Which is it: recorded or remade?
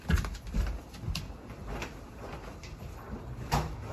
recorded